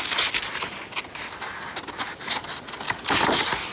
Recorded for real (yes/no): yes